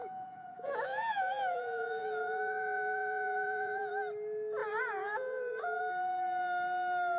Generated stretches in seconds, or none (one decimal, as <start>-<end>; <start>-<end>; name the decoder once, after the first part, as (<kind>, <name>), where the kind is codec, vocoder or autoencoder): 0.0-3.9 (vocoder, Vocos); 4.6-5.8